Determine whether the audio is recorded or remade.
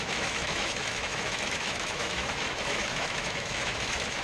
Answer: remade